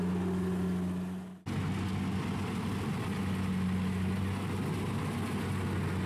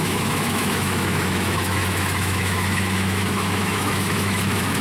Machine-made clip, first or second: second